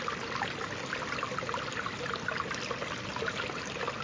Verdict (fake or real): real